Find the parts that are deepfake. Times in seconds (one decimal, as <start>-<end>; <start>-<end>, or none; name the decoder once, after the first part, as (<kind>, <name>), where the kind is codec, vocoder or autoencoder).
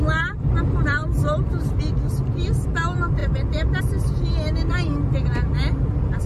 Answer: 1.0-1.8 (vocoder, BigVGAN v2); 3.2-3.8